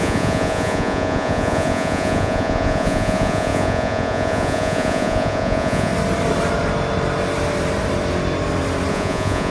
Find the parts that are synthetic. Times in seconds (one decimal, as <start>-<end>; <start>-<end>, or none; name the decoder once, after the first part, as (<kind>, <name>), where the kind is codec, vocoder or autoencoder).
0.0-5.9 (vocoder, Vocos); 8.9-9.5